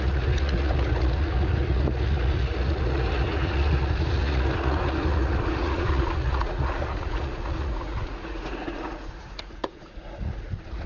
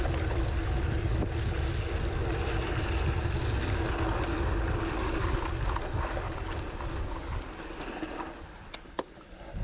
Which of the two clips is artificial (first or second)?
first